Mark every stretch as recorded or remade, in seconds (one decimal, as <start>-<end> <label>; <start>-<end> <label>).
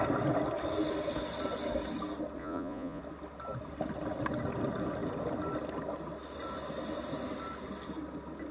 0.0-2.4 recorded; 2.4-3.0 remade; 3.0-8.5 recorded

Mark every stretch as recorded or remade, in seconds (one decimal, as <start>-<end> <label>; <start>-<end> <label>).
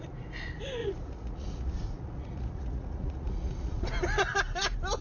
0.0-0.8 recorded; 0.8-3.8 remade; 3.8-5.0 recorded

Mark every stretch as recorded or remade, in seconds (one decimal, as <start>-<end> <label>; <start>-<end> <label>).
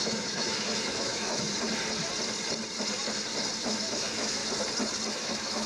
0.0-1.5 remade; 1.5-3.6 recorded; 3.6-4.4 remade; 4.4-5.1 recorded; 5.1-5.7 remade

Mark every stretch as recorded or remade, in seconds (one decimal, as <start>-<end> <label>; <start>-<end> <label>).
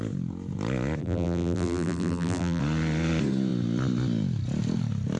0.0-1.0 recorded; 1.0-2.6 remade; 2.6-5.2 recorded